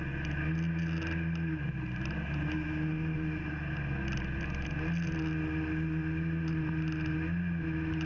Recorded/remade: recorded